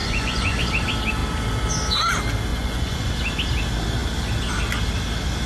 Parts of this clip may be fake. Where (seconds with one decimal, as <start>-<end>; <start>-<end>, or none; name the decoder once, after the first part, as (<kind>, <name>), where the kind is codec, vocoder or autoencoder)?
0.0-0.7 (vocoder, Vocos); 2.5-3.1